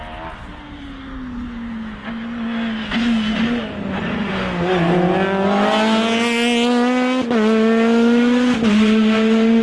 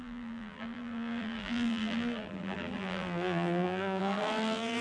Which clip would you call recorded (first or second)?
first